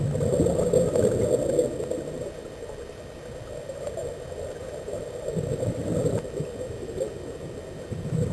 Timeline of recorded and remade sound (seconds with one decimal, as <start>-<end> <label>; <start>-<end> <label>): 0.0-8.3 recorded